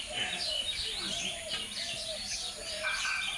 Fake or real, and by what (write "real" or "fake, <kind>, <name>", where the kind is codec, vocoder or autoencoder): real